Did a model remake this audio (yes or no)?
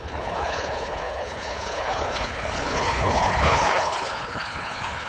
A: yes